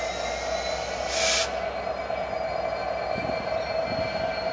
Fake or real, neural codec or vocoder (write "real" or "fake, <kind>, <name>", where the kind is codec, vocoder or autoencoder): real